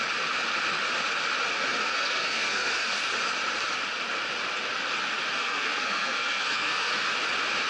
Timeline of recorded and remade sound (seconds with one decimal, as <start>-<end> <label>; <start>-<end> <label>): 0.0-1.8 recorded; 1.8-2.9 remade; 2.9-5.4 recorded; 5.4-6.9 remade; 6.9-7.7 recorded